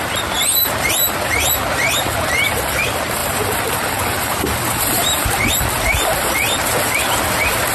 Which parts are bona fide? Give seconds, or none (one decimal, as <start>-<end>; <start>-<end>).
0.0-3.2; 5.6-7.7